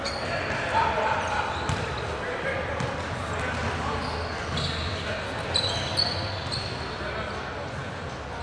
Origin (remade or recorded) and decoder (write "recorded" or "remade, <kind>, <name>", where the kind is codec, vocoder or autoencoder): recorded